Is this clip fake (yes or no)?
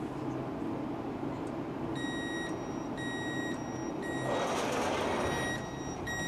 no